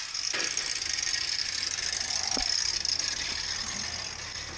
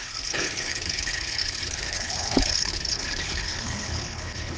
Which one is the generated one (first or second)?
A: second